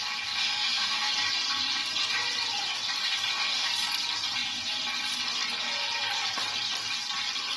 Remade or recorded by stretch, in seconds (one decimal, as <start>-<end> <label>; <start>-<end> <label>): 0.0-0.4 recorded; 0.4-1.1 remade; 1.1-3.0 recorded; 3.0-3.7 remade; 3.7-7.6 recorded